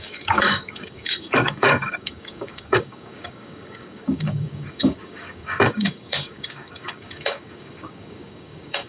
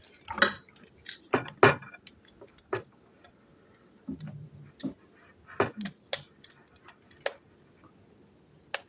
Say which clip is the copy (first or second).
first